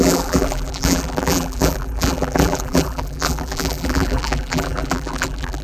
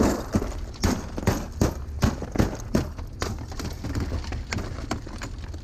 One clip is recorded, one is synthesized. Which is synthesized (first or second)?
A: first